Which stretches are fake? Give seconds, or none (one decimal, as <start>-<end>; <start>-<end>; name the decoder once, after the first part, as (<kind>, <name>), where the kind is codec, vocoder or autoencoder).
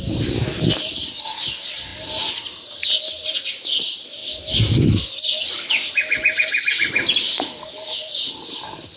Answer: none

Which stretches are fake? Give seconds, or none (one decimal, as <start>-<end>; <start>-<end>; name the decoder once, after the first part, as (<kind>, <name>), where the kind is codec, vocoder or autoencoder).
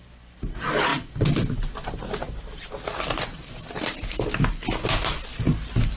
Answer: none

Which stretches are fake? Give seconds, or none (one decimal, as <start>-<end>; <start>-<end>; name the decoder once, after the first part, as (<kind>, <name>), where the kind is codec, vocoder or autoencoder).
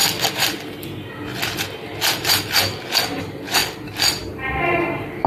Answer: none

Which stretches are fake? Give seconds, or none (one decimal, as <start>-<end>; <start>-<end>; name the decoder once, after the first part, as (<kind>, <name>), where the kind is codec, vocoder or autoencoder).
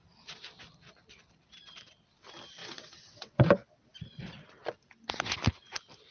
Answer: 2.6-3.5 (vocoder, WaveNeXt)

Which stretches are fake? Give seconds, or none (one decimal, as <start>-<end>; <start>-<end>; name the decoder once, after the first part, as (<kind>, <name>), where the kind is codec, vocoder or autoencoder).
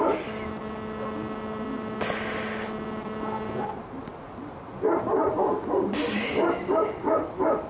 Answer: none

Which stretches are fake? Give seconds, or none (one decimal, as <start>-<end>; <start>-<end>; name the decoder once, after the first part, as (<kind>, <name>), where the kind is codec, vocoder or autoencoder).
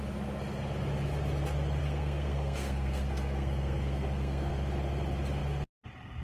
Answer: 1.8-4.5 (codec, SNAC)